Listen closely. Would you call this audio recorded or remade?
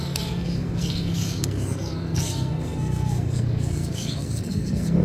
remade